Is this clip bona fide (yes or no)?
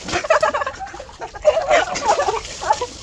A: yes